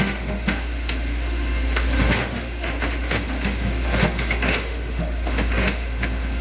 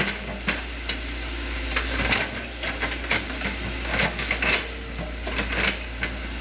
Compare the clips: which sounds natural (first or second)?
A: second